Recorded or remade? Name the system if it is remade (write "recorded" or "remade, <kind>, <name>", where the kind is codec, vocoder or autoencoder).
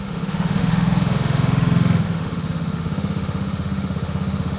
remade, autoencoder, DAC-VAE